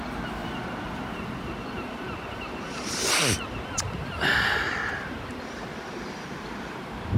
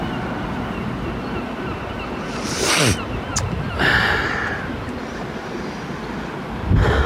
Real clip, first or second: second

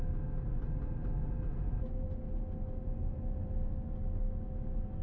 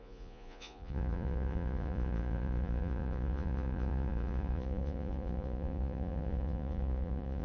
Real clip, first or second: first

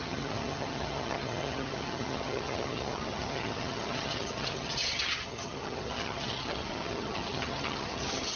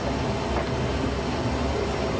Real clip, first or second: second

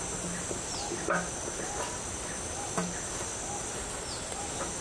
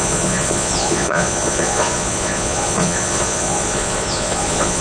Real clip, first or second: first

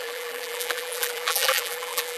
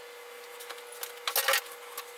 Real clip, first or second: second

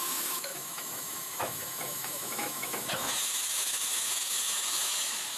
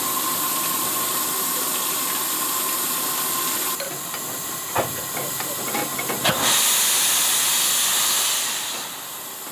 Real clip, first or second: second